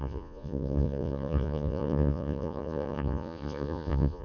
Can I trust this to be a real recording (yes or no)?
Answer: no